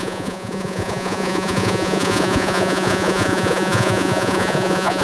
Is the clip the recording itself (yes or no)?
no